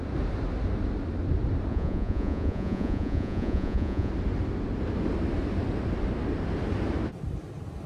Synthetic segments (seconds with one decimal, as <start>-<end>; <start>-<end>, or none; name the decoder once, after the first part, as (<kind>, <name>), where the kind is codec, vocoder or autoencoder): 1.7-4.1 (vocoder, Vocos)